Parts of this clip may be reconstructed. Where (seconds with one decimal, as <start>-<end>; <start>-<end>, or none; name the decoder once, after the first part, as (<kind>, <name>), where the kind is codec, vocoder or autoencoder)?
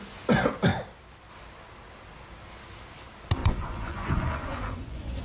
3.4-5.2 (vocoder, Vocos)